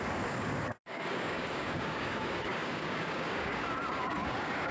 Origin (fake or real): fake